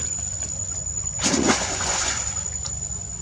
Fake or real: fake